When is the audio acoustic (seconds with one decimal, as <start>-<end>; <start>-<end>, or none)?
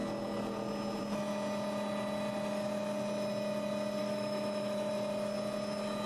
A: 0.0-4.0; 4.9-6.1